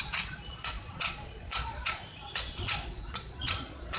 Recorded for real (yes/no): no